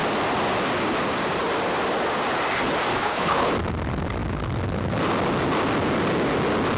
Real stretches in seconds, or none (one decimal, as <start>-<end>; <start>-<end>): 0.0-2.9; 3.5-6.8